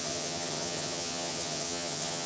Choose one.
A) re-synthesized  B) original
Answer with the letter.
A